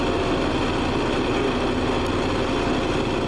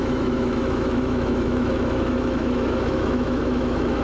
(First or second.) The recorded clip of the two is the first